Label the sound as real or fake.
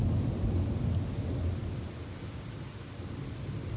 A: real